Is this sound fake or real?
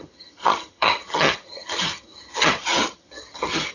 fake